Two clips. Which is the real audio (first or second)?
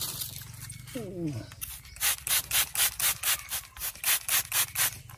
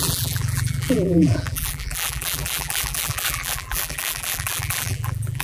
first